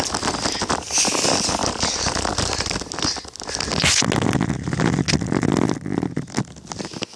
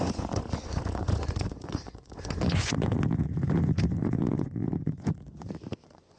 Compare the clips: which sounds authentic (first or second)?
first